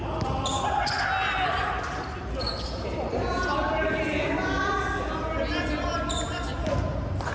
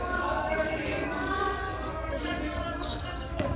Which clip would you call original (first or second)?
first